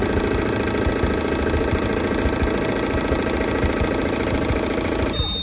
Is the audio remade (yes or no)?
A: no